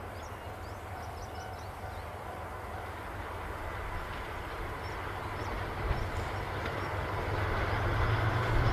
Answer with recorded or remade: recorded